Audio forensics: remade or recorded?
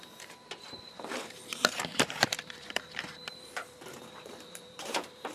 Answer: remade